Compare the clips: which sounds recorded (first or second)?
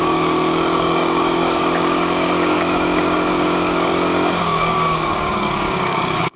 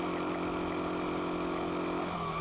second